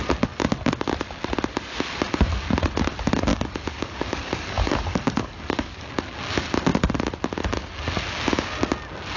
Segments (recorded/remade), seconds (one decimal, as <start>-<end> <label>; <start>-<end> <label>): 0.0-3.3 recorded; 3.3-5.9 remade; 5.9-9.2 recorded